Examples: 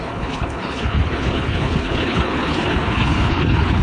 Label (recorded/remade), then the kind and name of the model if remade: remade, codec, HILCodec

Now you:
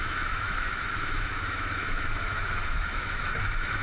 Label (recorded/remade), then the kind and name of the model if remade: remade, autoencoder, DAC-VAE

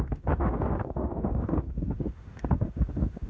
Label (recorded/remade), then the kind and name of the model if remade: remade, autoencoder, DAC-VAE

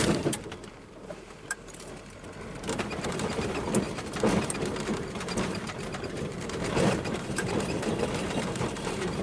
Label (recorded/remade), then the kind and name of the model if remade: remade, vocoder, BigVGAN v2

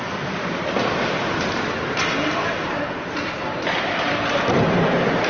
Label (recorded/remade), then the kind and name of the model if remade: remade, vocoder, BigVGAN v2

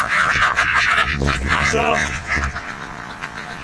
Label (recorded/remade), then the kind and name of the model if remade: remade, vocoder, Vocos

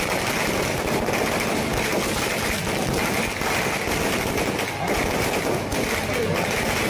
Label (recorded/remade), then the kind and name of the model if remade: recorded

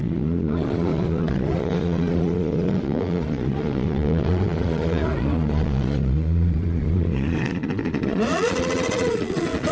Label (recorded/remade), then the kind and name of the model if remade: remade, vocoder, Vocos